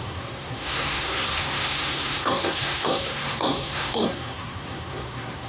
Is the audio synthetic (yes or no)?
yes